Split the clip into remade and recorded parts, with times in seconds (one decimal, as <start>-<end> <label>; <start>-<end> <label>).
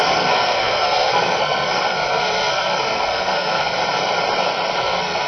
0.0-3.8 remade; 3.8-4.8 recorded; 4.8-5.3 remade